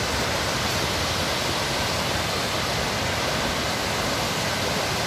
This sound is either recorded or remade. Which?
recorded